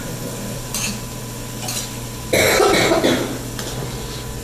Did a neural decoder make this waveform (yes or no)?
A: no